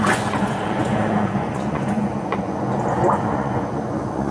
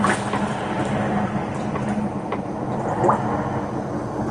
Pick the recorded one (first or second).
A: second